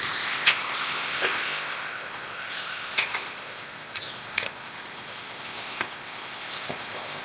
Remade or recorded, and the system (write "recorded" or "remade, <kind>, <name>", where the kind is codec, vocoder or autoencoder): remade, codec, ZipCodec